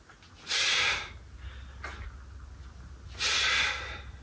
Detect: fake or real real